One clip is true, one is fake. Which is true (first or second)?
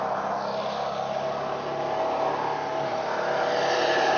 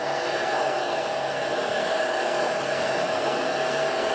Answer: first